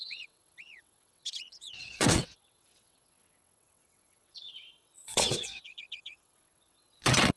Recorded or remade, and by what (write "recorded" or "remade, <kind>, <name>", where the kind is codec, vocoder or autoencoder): remade, vocoder, WaveNeXt